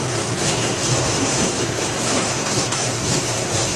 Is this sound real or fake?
fake